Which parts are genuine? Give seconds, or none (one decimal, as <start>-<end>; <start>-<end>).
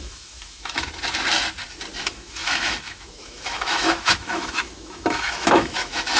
0.9-2.0